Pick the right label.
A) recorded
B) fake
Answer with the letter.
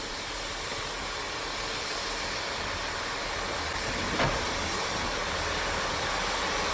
A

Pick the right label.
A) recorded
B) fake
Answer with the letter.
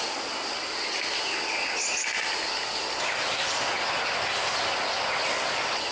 A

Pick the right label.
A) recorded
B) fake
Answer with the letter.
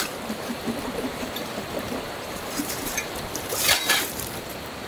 B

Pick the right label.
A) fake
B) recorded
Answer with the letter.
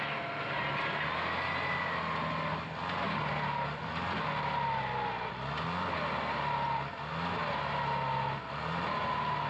B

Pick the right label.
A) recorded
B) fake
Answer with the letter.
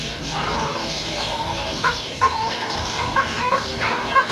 B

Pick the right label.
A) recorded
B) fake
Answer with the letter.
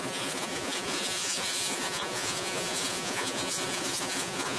B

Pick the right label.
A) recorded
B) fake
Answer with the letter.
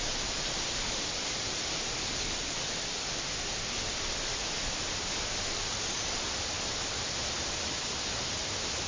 B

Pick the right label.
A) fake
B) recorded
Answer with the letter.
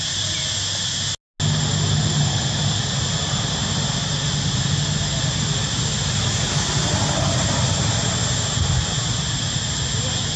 B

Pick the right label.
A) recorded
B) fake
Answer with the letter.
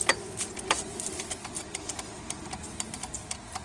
A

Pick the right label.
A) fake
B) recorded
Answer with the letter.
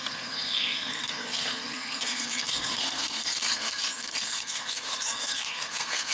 A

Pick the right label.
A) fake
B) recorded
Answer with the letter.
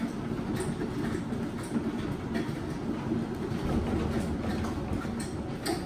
B